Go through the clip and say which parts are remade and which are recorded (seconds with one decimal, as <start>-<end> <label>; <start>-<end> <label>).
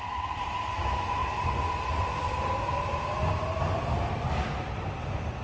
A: 0.0-5.4 recorded